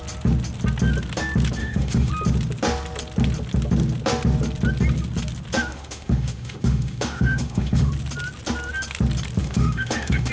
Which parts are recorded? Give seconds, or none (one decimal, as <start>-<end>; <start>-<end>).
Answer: 0.0-1.6; 2.1-5.7; 7.9-9.4

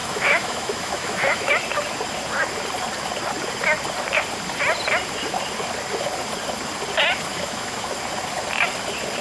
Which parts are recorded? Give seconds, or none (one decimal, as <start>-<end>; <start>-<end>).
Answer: 1.5-7.3; 7.9-9.2

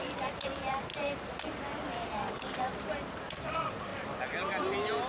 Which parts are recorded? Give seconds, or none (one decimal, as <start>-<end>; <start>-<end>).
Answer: 0.0-5.1

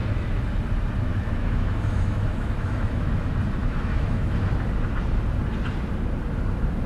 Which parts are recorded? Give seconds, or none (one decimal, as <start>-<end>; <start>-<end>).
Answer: 0.0-1.1; 3.1-3.6; 4.5-6.9

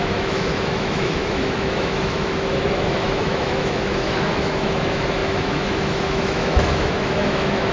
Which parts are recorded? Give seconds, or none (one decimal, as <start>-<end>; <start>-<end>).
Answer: none